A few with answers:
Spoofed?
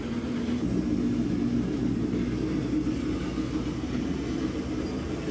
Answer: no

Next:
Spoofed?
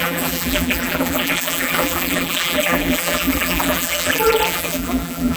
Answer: yes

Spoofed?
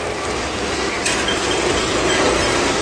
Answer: no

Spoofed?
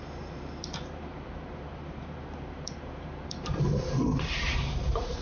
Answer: yes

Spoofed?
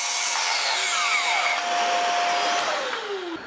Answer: no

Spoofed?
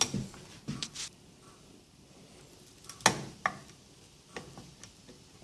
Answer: no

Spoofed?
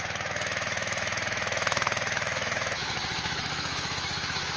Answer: yes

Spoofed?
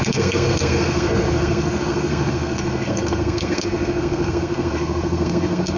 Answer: yes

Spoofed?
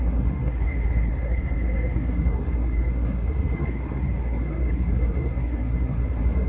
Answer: yes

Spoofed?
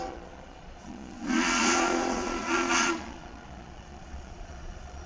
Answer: yes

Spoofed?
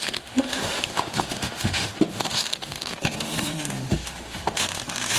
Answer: yes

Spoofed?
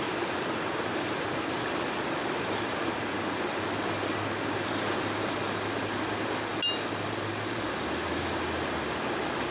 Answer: no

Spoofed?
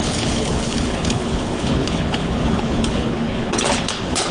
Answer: yes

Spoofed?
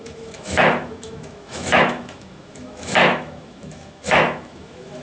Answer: yes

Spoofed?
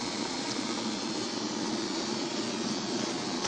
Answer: yes